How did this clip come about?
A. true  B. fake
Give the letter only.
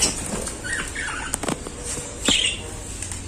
A